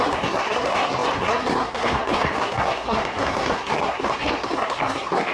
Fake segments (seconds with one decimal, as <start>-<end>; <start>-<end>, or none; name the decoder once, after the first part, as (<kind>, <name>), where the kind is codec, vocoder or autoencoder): 0.0-5.3 (codec, SNAC)